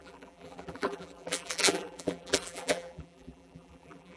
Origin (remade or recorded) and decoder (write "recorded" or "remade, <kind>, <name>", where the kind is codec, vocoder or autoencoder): remade, vocoder, BigVGAN v2